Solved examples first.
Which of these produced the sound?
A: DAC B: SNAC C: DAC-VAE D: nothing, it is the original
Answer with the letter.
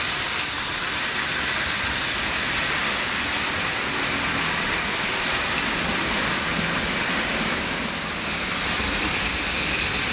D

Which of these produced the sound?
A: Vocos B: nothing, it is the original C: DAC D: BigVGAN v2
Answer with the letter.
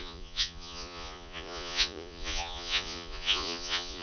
A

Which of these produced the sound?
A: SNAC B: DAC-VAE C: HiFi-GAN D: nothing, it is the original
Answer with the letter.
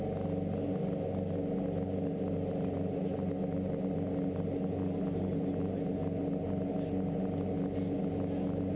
D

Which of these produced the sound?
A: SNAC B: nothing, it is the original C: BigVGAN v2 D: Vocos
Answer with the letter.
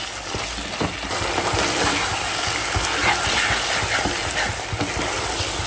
B